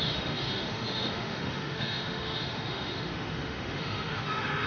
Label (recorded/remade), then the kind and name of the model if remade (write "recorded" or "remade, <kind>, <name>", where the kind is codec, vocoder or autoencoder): remade, autoencoder, DAC-VAE